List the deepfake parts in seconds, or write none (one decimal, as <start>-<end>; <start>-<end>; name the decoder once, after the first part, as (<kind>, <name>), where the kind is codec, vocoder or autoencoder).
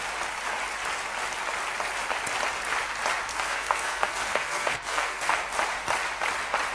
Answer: 3.3-5.4 (codec, SNAC)